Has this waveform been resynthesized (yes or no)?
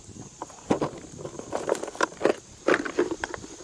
no